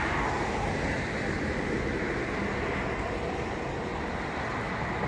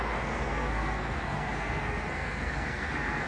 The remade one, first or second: second